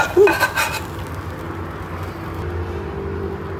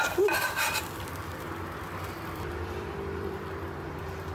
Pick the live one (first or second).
first